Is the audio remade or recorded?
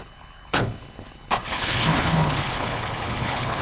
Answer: remade